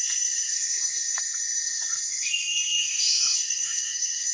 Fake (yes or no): yes